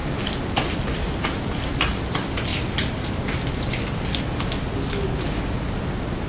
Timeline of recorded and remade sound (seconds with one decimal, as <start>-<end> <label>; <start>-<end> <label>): 0.0-2.1 remade; 2.1-2.5 recorded; 2.5-3.2 remade; 3.2-6.3 recorded